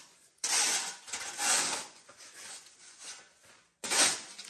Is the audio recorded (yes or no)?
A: no